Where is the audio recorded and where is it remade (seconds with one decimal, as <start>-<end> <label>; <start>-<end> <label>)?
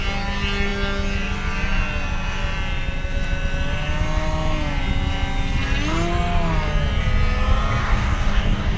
0.0-7.8 recorded; 7.8-8.8 remade